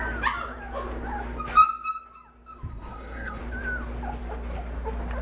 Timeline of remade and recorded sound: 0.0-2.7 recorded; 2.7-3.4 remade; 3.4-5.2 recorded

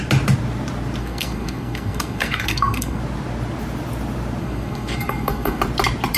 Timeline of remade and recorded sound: 0.0-1.0 recorded; 1.0-3.0 remade; 3.0-4.4 recorded; 4.4-5.6 remade; 5.6-6.2 recorded

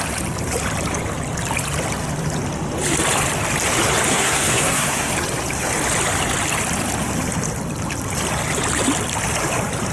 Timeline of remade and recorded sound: 0.0-4.1 recorded; 4.1-5.1 remade; 5.1-9.9 recorded

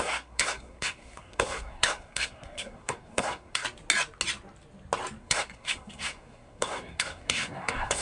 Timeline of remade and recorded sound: 0.0-3.6 remade; 3.6-5.2 recorded; 5.2-8.0 remade

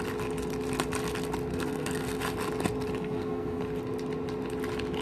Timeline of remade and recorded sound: 0.0-1.5 recorded; 1.5-2.2 remade; 2.2-3.0 recorded; 3.0-3.6 remade; 3.6-5.0 recorded

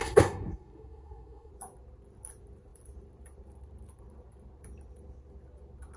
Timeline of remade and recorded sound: 0.0-1.5 remade; 1.5-6.0 recorded

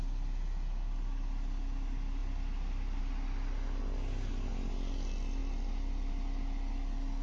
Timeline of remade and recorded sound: 0.0-7.2 recorded